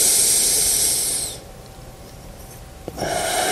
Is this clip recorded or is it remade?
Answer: remade